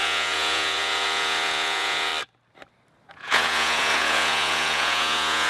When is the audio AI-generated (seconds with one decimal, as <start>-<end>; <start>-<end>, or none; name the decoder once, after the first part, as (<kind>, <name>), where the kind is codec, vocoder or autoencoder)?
0.0-2.1 (vocoder, Vocos); 3.1-5.5